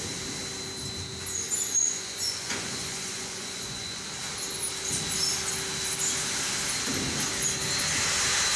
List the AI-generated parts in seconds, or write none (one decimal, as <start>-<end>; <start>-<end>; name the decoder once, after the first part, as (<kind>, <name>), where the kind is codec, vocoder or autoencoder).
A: 1.8-4.0 (vocoder, Vocos)